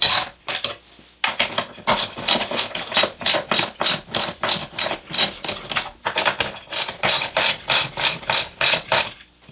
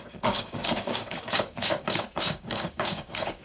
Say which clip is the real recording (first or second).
first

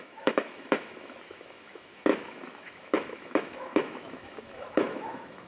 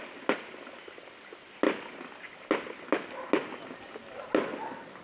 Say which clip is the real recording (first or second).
second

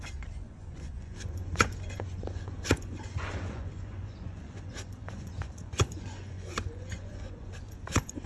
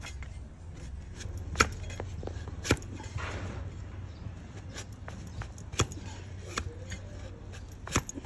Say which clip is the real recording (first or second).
second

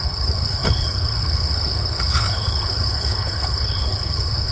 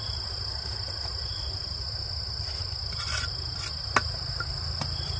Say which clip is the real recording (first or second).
second